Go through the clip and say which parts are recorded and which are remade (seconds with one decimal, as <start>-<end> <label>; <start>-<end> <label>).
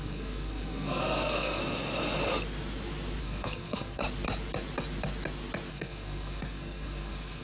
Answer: 0.0-1.6 remade; 1.6-3.2 recorded; 3.2-4.0 remade; 4.0-5.7 recorded; 5.7-7.4 remade